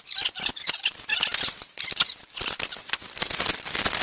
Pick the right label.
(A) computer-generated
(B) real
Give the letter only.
B